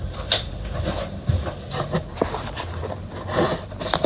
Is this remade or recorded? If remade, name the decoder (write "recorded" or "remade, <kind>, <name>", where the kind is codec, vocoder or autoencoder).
remade, vocoder, BigVGAN v2